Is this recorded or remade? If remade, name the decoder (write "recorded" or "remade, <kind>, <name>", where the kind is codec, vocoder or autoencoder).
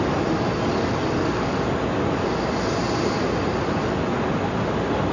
recorded